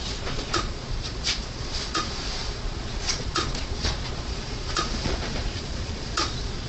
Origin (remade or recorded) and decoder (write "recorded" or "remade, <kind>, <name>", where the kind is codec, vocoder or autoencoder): remade, vocoder, Vocos